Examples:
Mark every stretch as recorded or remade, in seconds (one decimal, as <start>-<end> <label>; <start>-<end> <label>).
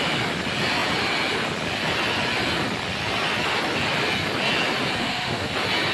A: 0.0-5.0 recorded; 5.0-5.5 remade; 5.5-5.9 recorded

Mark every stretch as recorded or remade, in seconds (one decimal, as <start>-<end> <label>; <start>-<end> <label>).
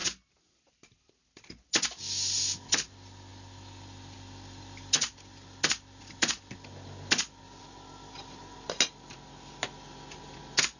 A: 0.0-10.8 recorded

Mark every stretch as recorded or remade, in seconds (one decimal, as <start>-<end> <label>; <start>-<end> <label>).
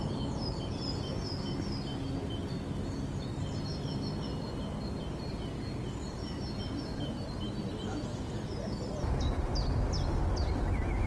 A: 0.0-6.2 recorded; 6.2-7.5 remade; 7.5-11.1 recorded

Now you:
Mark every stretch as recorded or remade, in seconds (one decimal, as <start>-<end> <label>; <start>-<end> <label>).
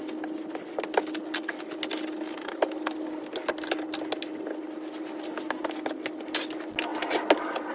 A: 0.0-7.7 recorded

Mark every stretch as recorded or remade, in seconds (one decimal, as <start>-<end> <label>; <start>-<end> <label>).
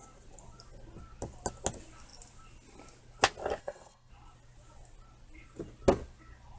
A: 0.0-3.6 recorded; 3.6-4.1 remade; 4.1-6.6 recorded